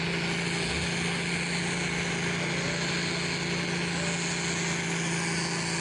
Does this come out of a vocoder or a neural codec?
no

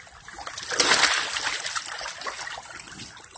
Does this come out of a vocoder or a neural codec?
no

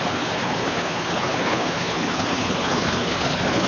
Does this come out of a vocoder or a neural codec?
yes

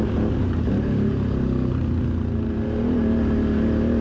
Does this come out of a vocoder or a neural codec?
no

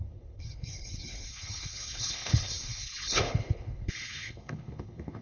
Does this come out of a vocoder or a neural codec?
yes